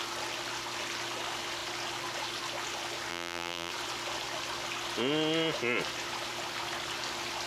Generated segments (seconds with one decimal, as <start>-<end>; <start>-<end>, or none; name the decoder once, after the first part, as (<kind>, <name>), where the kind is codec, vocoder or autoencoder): 3.1-3.7 (vocoder, BigVGAN v2)